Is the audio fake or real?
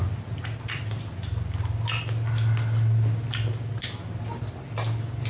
real